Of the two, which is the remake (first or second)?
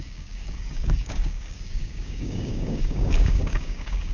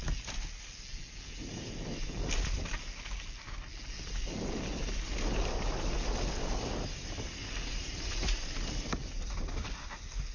first